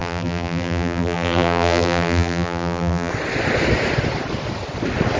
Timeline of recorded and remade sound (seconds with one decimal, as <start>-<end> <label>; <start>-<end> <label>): 0.0-3.1 remade; 3.1-5.2 recorded